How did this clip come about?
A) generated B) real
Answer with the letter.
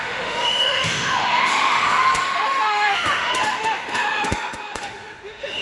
A